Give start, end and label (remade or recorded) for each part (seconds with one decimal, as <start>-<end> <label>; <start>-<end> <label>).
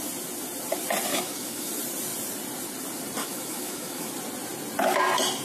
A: 0.0-1.1 recorded; 1.1-1.7 remade; 1.7-3.2 recorded; 3.2-4.1 remade; 4.1-5.4 recorded